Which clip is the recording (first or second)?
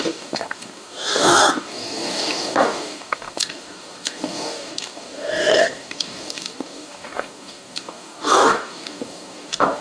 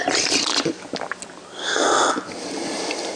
second